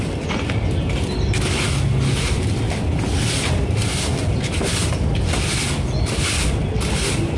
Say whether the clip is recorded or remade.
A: recorded